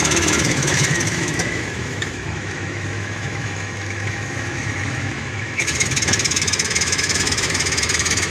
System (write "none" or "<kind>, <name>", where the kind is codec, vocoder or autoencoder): autoencoder, DAC-VAE